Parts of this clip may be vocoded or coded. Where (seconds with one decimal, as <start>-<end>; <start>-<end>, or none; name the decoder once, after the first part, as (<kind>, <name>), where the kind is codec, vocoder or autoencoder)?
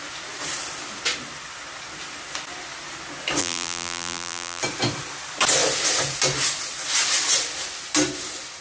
3.4-4.6 (vocoder, BigVGAN v2)